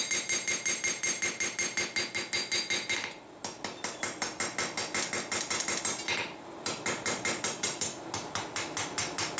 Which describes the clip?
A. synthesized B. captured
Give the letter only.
B